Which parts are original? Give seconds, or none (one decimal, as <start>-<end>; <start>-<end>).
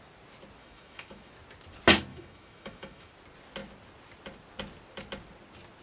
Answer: 0.0-0.6; 1.3-2.1; 3.1-5.8